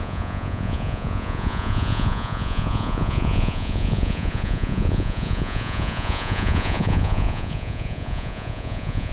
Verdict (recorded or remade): remade